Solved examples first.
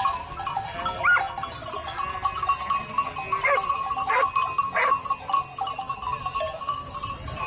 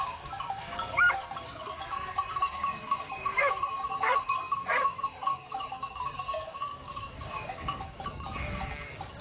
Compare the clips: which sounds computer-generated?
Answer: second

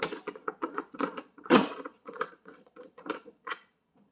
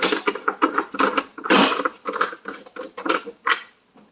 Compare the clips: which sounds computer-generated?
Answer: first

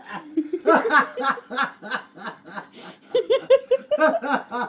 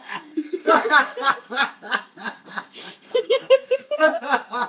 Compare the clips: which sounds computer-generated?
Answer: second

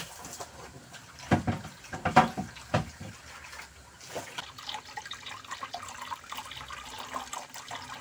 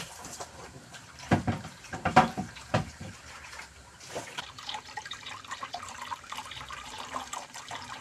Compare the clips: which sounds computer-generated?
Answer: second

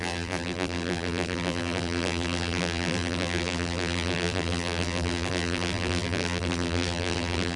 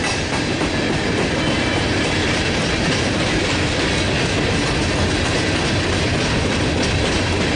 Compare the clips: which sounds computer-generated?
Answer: first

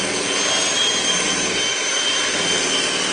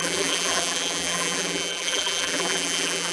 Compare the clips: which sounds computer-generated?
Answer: second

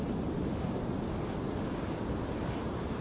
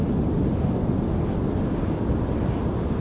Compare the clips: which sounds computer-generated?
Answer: first